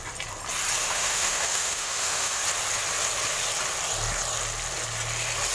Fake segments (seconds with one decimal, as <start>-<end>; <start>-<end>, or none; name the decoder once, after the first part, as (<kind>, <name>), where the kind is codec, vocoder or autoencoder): 0.8-2.4 (autoencoder, DAC-VAE)